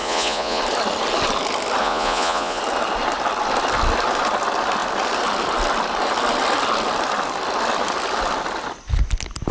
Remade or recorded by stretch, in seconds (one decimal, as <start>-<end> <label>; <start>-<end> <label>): 0.0-0.6 remade; 0.6-1.8 recorded; 1.8-2.6 remade; 2.6-9.5 recorded